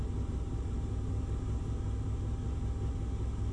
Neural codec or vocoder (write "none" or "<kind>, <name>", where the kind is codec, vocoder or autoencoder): none